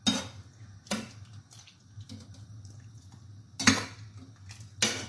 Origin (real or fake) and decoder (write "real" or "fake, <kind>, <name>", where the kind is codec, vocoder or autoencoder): real